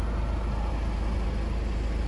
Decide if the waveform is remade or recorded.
recorded